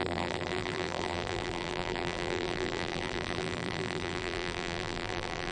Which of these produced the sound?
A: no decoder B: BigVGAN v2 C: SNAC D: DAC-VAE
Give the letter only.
B